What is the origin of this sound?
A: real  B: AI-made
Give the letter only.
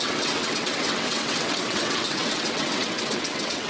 B